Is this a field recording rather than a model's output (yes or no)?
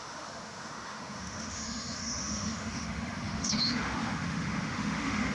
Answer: no